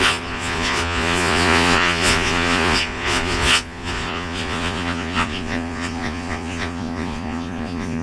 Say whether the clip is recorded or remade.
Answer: remade